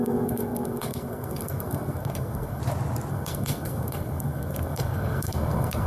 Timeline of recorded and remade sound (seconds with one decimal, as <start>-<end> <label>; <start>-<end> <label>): 0.0-2.6 remade; 2.6-3.1 recorded; 3.1-5.9 remade